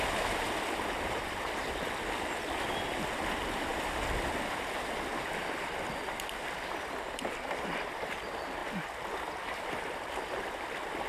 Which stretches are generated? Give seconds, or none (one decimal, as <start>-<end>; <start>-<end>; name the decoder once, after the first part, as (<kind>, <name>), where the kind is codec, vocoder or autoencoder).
0.0-8.6 (vocoder, BigVGAN v2); 9.4-11.1